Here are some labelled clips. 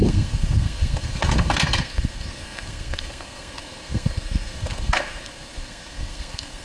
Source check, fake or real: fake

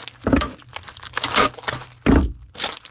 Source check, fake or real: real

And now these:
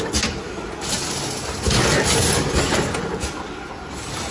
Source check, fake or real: real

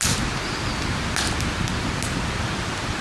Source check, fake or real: real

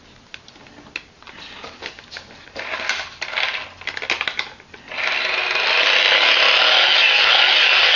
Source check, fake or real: real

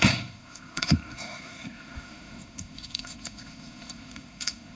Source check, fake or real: fake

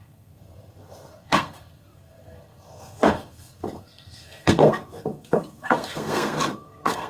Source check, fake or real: fake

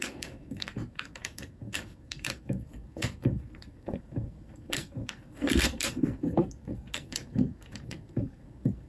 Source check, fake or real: fake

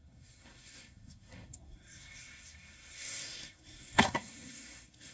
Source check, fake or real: fake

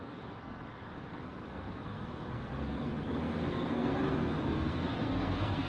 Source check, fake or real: fake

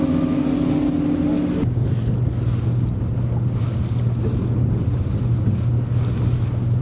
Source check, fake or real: real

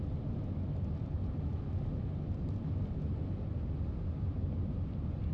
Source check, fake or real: real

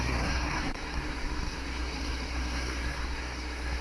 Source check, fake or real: fake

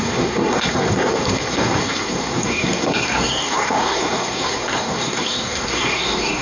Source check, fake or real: fake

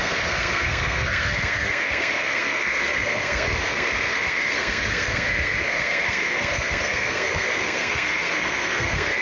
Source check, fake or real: fake